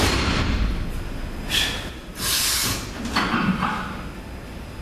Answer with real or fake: real